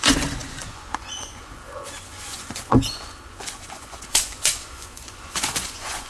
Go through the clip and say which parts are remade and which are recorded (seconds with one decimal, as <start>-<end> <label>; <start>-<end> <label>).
0.0-6.1 remade